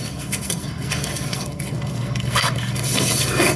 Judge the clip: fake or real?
fake